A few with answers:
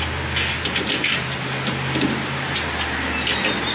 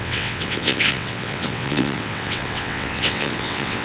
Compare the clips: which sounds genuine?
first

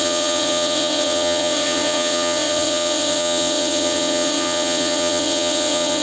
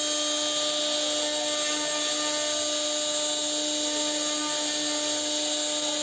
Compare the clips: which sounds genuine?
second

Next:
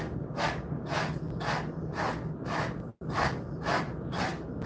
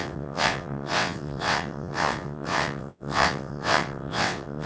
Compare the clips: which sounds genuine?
first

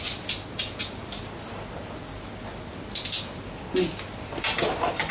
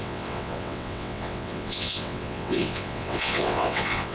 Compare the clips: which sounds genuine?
first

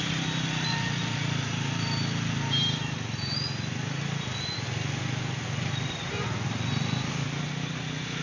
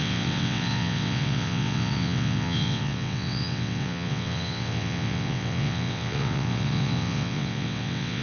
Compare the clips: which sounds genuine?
first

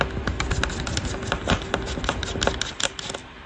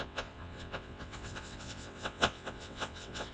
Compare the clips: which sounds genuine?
first